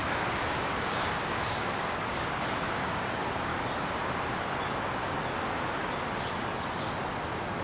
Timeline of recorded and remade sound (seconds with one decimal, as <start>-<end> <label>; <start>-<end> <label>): 0.0-0.6 recorded; 0.6-3.5 remade; 3.5-7.6 recorded